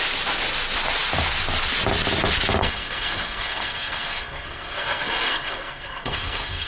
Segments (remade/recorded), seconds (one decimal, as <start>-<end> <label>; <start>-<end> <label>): 0.0-2.6 recorded; 2.6-6.7 remade